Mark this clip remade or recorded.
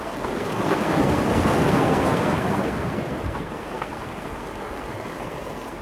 remade